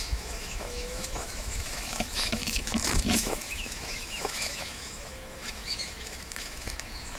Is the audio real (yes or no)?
no